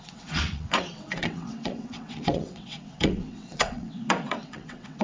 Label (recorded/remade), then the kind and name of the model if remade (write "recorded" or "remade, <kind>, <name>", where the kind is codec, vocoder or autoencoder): remade, vocoder, WaveNeXt